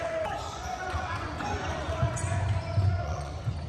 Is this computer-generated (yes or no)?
yes